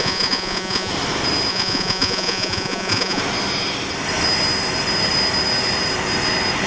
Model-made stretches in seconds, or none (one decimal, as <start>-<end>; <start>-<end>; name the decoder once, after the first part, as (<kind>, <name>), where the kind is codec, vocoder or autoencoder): 0.0-0.9 (vocoder, Vocos); 1.5-3.2